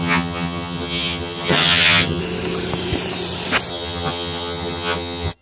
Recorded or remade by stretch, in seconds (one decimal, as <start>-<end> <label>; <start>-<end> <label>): 0.0-2.2 remade; 2.2-3.7 recorded; 3.7-5.4 remade